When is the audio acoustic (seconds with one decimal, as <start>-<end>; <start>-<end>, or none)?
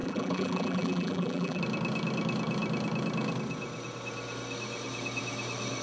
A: 1.6-5.8